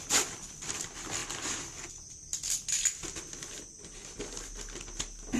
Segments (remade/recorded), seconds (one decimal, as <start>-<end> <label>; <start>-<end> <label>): 0.0-5.4 recorded